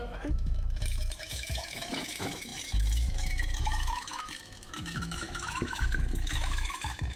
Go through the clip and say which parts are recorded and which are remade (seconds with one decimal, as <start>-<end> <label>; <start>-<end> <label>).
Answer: 0.0-7.2 remade